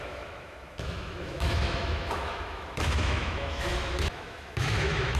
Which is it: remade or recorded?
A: remade